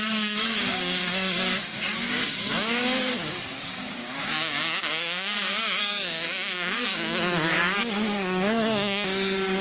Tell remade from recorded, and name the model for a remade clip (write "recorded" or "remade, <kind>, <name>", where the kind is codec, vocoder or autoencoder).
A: remade, codec, DAC